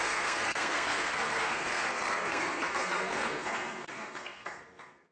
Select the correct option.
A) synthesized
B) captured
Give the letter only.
A